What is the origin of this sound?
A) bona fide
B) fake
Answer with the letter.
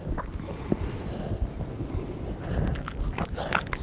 A